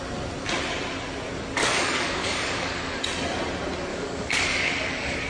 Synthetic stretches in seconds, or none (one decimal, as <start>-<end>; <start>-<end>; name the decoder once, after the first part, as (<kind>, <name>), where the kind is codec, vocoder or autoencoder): 1.6-3.0 (codec, DAC); 3.9-5.3